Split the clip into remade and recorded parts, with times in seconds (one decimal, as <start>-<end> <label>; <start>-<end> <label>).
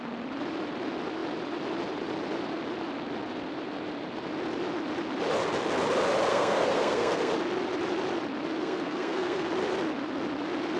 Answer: 0.0-6.3 recorded; 6.3-7.3 remade; 7.3-8.6 recorded; 8.6-9.5 remade; 9.5-10.8 recorded